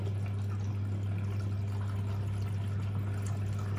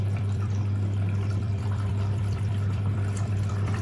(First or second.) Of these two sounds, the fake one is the second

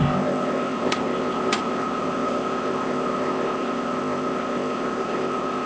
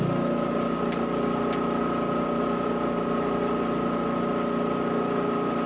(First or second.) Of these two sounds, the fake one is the first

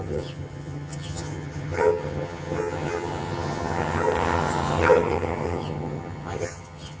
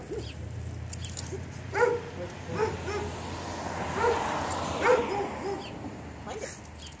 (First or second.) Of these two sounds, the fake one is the first